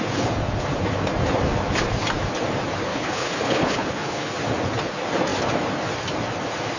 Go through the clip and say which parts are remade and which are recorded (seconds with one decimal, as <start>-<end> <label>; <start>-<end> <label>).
0.0-2.9 recorded; 2.9-4.3 remade; 4.3-6.8 recorded